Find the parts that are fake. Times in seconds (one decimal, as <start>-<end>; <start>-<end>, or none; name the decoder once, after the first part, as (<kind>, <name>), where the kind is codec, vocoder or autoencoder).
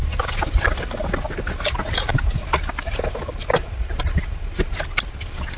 none